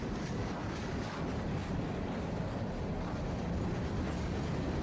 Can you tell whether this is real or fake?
real